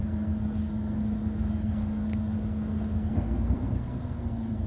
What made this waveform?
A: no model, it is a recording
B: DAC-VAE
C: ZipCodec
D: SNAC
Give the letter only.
D